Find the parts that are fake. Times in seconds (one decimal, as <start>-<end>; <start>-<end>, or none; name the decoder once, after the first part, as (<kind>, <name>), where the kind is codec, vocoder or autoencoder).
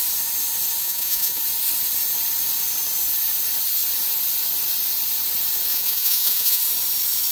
0.8-1.4 (vocoder, Vocos); 5.7-6.6